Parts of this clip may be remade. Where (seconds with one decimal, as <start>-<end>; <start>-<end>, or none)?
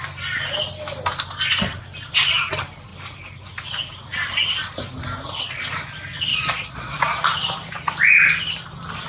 6.3-7.2